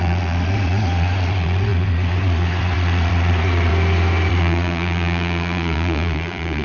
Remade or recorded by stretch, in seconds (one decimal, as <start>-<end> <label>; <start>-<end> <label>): 0.0-3.7 remade; 3.7-4.3 recorded; 4.3-6.6 remade